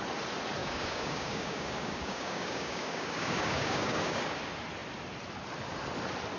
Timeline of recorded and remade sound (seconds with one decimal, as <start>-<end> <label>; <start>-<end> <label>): 0.0-0.6 recorded; 0.6-4.2 remade; 4.2-6.4 recorded